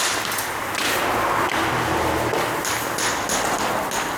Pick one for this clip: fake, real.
real